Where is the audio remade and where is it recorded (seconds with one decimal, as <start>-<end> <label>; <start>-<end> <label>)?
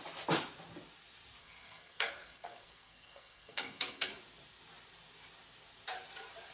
0.0-1.4 recorded; 1.4-4.1 remade; 4.1-6.5 recorded